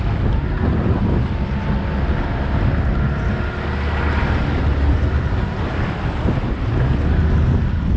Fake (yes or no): no